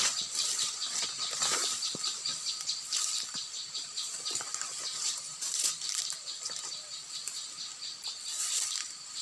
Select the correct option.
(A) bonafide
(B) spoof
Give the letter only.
B